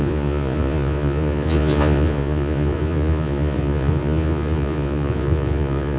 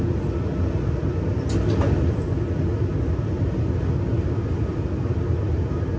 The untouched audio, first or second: second